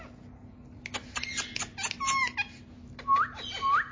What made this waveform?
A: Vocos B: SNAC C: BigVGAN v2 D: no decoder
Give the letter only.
D